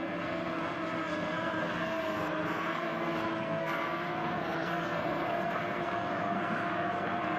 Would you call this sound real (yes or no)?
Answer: no